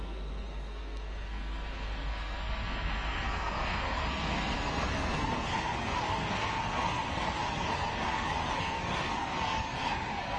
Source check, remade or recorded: remade